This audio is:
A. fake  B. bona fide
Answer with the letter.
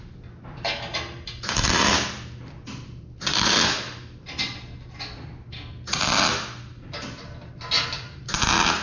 B